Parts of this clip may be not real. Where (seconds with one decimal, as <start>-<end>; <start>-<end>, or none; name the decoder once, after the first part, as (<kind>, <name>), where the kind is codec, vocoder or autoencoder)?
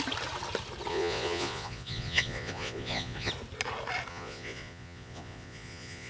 0.9-3.3 (vocoder, Vocos); 4.1-6.1